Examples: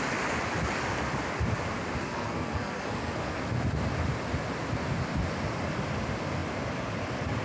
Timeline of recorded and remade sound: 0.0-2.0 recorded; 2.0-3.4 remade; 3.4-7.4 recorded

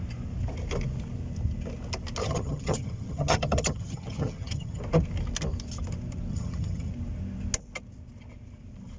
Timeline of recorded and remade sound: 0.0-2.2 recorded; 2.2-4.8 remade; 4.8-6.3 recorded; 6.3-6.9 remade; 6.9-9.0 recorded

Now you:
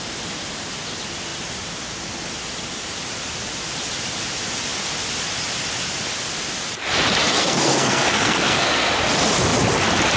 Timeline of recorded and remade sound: 0.0-7.3 recorded; 7.3-8.9 remade; 8.9-10.2 recorded